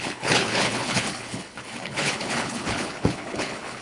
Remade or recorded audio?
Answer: remade